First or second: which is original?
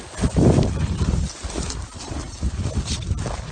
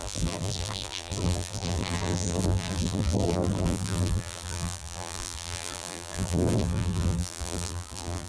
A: first